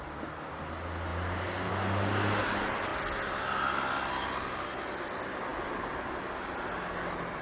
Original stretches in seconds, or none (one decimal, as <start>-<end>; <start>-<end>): 0.0-1.1; 1.7-7.4

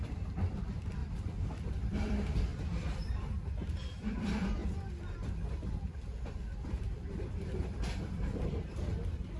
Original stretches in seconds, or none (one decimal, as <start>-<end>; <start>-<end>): 1.0-1.7; 4.6-5.6

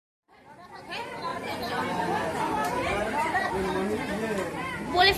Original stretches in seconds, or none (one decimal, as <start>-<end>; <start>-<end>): 0.0-1.3; 2.0-2.6; 3.5-5.2